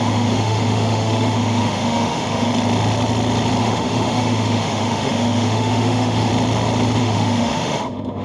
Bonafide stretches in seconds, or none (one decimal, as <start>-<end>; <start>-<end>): 2.5-3.6; 6.3-7.0